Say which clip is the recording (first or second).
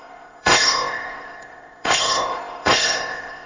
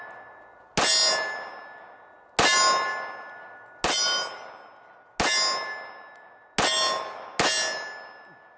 second